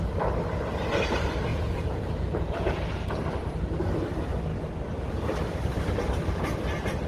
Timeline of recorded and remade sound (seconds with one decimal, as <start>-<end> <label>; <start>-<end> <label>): 0.0-1.5 recorded; 1.5-3.1 remade; 3.1-7.1 recorded